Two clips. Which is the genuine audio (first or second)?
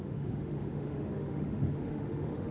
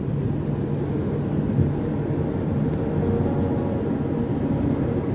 second